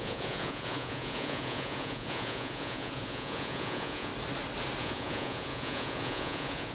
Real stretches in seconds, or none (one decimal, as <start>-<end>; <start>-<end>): 4.1-4.8